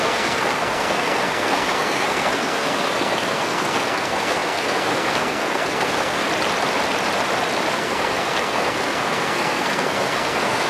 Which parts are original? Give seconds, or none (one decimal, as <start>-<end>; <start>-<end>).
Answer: 6.2-7.7